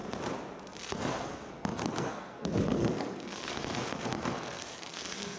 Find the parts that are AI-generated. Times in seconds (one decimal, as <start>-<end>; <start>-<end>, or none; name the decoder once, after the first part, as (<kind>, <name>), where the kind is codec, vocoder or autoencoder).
0.8-5.4 (codec, SNAC)